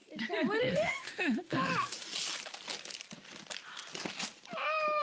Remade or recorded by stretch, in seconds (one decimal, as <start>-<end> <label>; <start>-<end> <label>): 0.0-0.6 recorded; 0.6-1.7 remade; 1.7-5.0 recorded